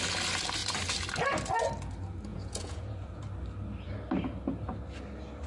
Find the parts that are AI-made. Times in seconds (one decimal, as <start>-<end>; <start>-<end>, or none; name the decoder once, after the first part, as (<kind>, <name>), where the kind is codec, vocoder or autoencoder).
2.3-3.2 (vocoder, Vocos)